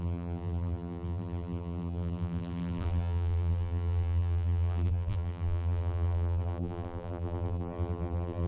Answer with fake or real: fake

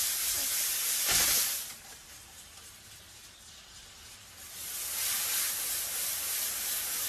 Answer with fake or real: real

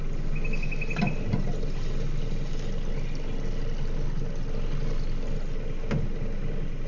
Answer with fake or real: real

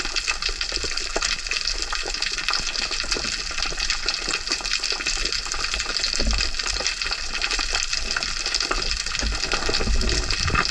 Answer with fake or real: real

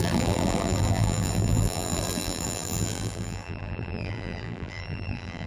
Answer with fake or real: fake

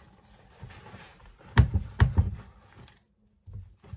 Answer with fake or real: real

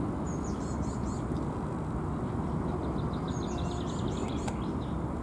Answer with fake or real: real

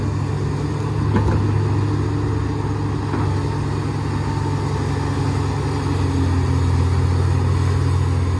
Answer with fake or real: real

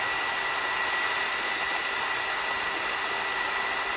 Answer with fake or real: real